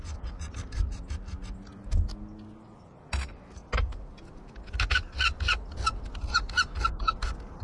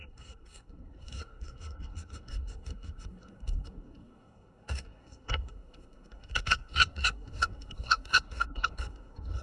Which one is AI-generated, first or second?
second